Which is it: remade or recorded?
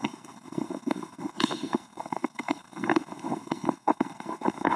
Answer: remade